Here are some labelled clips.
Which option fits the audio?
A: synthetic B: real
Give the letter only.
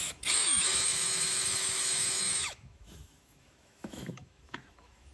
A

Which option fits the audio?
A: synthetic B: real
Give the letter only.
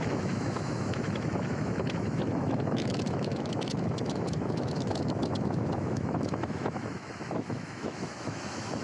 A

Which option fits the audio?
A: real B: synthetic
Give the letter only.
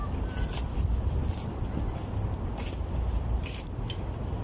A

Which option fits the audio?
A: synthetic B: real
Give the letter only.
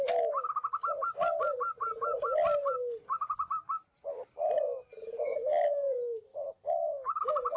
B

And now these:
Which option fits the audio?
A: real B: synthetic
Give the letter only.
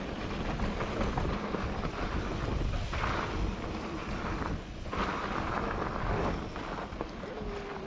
A